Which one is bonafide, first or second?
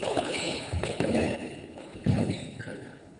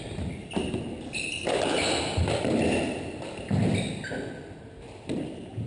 second